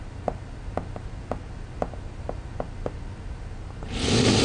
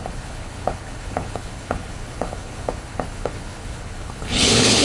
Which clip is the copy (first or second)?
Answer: second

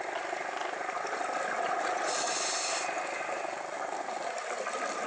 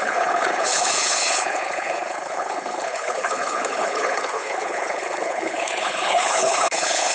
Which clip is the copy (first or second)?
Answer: second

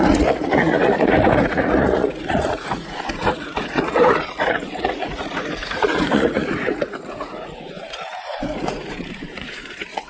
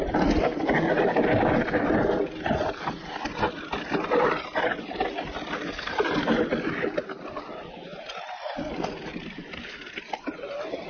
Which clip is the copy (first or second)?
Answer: first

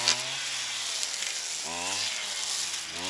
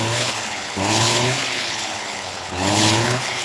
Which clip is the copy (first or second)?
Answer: second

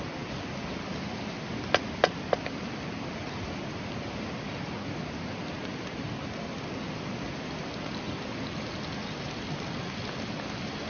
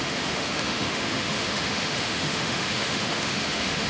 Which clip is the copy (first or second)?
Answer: second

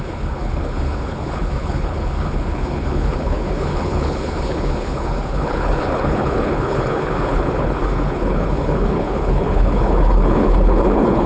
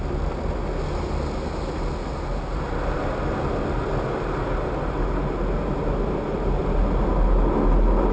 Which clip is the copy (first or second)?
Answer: first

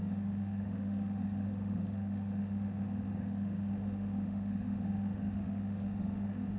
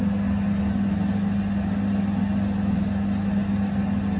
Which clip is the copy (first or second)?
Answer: first